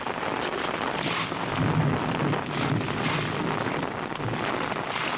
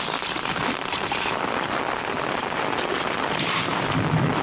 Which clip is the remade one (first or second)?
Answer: second